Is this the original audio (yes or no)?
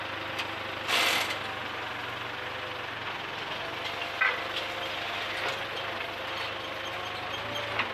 yes